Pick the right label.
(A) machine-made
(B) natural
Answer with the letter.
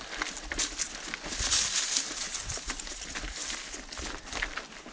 B